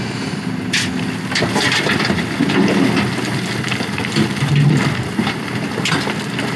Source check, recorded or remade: recorded